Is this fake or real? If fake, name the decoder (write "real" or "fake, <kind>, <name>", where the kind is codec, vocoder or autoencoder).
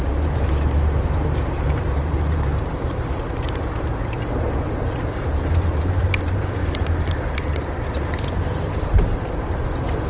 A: fake, vocoder, BigVGAN v2